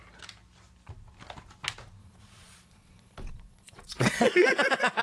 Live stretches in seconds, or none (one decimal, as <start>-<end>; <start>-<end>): 0.0-2.0